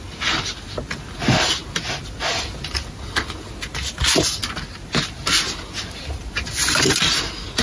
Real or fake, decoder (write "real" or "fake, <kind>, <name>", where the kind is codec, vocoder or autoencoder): real